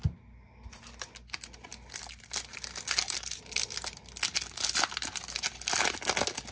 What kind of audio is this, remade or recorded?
recorded